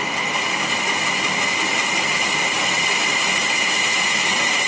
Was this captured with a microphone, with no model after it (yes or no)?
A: yes